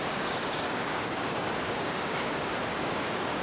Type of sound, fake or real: fake